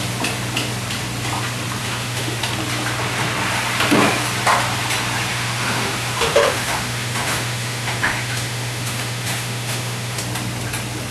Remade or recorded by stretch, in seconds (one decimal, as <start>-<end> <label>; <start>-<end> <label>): 0.0-1.8 recorded; 1.8-2.4 remade; 2.4-5.3 recorded; 5.3-10.2 remade; 10.2-11.1 recorded